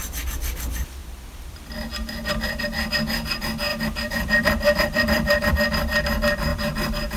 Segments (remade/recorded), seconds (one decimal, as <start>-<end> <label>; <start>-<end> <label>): 0.0-1.0 recorded; 1.0-2.6 remade; 2.6-3.7 recorded; 3.7-5.5 remade; 5.5-6.5 recorded; 6.5-7.2 remade